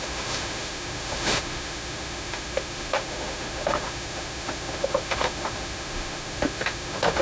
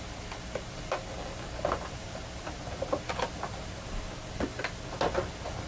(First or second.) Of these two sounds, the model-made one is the first